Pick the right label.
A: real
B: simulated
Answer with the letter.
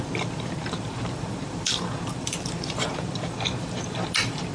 B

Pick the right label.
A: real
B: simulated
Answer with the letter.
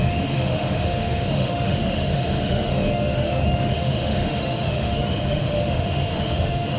B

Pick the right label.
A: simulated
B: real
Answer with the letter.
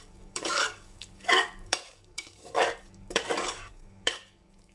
A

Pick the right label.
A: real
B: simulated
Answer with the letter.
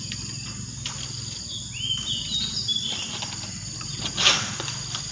A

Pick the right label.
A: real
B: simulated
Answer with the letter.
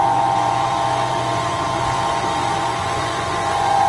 B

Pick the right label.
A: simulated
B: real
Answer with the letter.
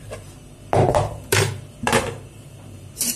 A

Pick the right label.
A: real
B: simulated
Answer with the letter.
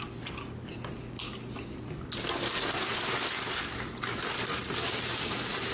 A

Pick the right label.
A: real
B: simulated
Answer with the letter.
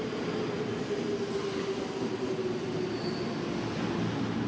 A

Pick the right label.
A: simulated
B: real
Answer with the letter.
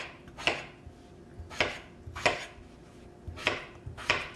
B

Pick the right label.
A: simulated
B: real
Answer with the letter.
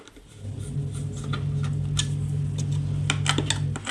B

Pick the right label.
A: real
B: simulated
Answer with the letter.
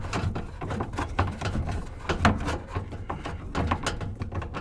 A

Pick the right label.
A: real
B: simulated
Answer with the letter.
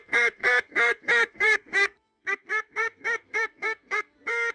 B